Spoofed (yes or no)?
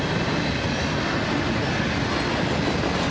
no